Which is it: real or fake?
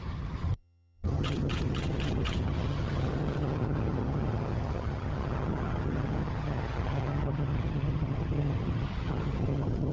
fake